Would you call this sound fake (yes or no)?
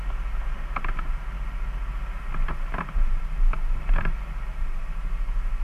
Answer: no